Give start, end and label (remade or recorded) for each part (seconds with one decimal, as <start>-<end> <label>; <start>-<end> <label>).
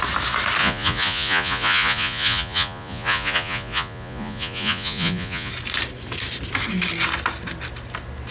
0.0-0.6 recorded; 0.6-5.5 remade; 5.5-8.3 recorded